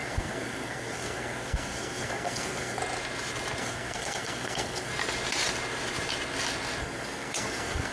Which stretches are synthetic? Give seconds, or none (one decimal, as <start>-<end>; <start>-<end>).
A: 0.0-2.8; 3.6-4.9; 6.8-7.9

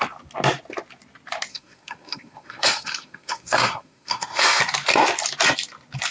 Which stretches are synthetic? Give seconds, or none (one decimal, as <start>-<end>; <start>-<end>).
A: 1.5-4.6

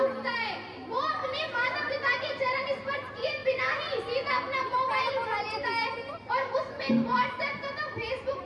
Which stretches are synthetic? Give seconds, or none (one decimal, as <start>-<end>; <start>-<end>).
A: 0.0-3.4; 5.9-8.5